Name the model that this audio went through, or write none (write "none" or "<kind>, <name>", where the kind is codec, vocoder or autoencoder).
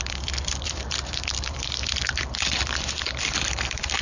vocoder, BigVGAN v2